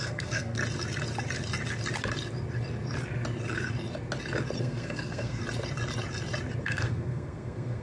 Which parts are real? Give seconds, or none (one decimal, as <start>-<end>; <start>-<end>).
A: 0.6-4.6; 5.4-6.6